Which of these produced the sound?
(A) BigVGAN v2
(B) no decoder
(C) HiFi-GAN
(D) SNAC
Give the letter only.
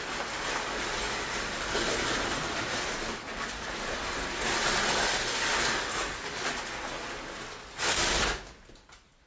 B